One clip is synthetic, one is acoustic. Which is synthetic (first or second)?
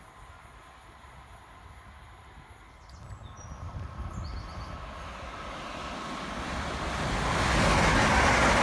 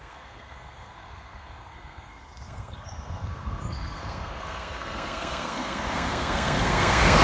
second